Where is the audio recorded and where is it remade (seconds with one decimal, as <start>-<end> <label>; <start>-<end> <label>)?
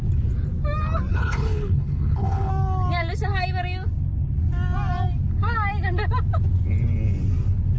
0.0-1.1 recorded; 1.1-2.5 remade; 2.5-7.8 recorded